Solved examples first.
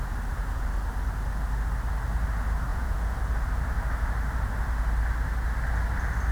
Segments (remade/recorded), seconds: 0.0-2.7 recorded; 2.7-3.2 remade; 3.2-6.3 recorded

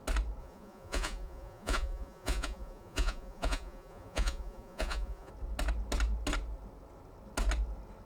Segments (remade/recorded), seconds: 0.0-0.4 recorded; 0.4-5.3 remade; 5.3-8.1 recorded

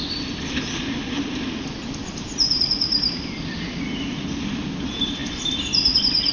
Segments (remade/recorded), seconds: 0.0-3.8 remade; 3.8-5.2 recorded; 5.2-6.3 remade